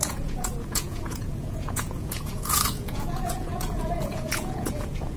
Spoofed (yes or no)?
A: yes